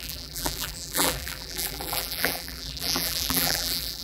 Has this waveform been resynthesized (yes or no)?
yes